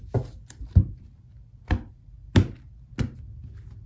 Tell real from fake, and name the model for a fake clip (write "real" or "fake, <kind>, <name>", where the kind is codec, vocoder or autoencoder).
real